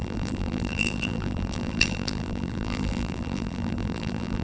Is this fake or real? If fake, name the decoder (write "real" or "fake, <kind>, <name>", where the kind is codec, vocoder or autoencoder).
fake, vocoder, BigVGAN v2